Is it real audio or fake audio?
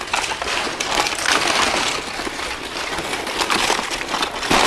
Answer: real